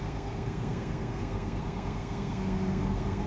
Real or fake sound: fake